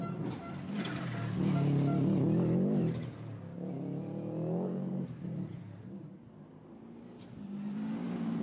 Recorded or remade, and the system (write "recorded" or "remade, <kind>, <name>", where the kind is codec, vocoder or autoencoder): recorded